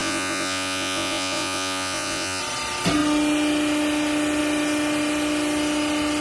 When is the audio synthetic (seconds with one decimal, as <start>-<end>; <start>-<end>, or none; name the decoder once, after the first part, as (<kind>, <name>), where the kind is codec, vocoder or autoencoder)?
0.0-2.4 (vocoder, Vocos)

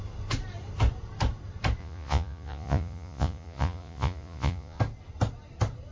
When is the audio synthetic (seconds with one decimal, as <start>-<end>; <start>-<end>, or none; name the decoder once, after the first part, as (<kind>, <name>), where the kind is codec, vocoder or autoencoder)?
1.8-4.8 (vocoder, Vocos)

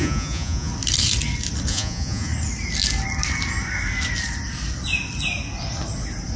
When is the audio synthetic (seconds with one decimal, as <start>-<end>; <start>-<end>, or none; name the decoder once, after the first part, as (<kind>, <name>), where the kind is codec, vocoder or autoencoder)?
0.0-0.7 (vocoder, Vocos); 1.7-2.3